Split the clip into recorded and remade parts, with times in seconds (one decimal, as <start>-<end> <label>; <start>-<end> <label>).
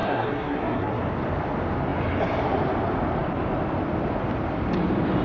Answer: 0.0-1.0 remade; 1.0-5.2 recorded